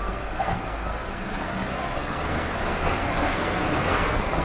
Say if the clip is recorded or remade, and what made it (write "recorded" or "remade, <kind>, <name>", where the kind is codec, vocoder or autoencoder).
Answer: remade, codec, SNAC